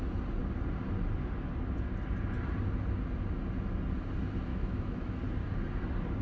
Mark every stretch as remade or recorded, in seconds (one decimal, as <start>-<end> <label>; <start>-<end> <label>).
0.0-4.5 recorded; 4.5-5.1 remade; 5.1-6.2 recorded